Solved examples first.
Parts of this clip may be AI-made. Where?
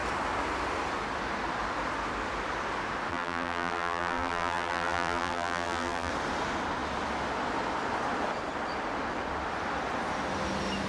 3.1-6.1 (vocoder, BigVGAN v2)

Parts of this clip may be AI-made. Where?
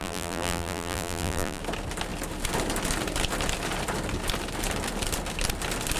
0.0-1.6 (vocoder, BigVGAN v2)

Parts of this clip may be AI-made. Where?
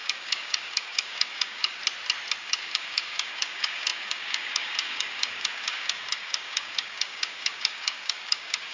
0.0-1.8 (codec, DAC); 2.4-8.7